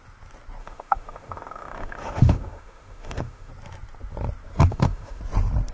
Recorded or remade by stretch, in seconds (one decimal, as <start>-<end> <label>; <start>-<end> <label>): 0.0-0.6 recorded; 0.6-3.5 remade; 3.5-4.7 recorded; 4.7-5.2 remade; 5.2-5.7 recorded